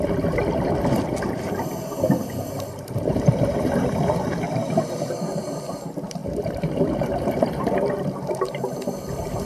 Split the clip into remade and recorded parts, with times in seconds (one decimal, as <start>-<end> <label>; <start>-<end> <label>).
0.0-9.5 remade

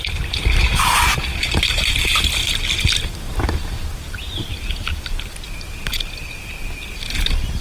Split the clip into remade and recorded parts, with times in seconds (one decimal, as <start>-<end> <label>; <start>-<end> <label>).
0.0-1.3 recorded; 1.3-2.3 remade; 2.3-7.6 recorded

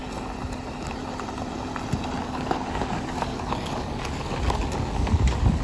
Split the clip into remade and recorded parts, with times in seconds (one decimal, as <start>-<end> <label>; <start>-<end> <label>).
0.0-2.2 recorded; 2.2-5.6 remade

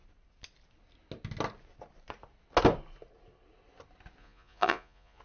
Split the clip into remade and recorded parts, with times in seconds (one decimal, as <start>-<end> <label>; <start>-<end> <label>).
0.0-4.2 recorded; 4.2-5.2 remade